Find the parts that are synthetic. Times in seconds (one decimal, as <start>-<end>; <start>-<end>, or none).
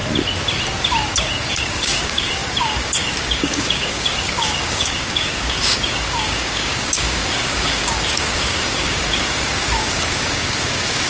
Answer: 1.5-11.1